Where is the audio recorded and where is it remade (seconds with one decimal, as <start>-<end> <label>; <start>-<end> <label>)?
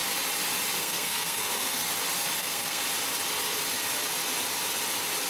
0.0-0.8 recorded; 0.8-1.9 remade; 1.9-2.4 recorded; 2.4-2.8 remade; 2.8-5.3 recorded